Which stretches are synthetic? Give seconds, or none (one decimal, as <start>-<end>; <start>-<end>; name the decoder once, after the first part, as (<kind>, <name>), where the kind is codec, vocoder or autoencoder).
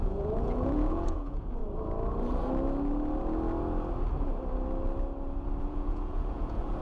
0.0-1.6 (vocoder, Vocos); 5.6-6.8